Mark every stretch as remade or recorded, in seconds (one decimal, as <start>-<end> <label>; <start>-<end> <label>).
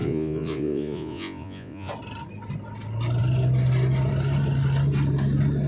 0.0-1.9 remade; 1.9-5.7 recorded